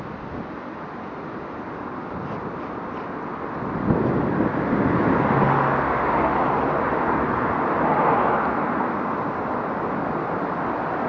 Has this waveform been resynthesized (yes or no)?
no